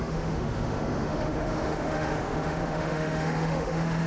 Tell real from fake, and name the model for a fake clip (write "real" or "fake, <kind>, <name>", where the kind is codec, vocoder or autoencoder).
fake, autoencoder, DAC-VAE